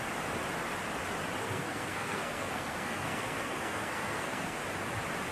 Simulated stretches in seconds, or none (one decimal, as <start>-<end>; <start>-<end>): 1.4-4.6